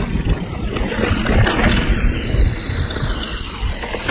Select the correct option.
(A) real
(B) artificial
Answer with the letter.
A